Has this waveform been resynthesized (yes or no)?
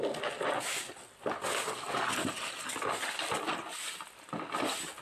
no